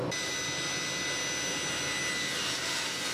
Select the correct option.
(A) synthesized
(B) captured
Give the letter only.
B